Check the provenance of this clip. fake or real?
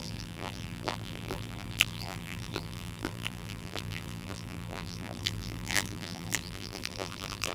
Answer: fake